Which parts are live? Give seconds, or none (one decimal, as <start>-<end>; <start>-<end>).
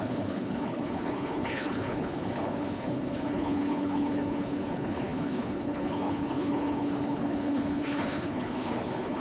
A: none